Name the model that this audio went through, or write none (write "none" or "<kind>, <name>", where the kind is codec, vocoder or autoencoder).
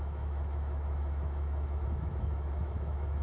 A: autoencoder, DAC-VAE